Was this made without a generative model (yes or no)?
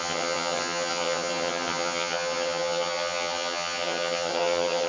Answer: no